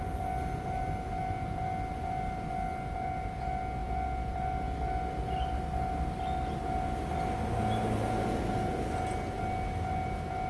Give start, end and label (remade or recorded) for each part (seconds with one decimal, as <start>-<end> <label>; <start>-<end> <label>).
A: 0.0-10.5 recorded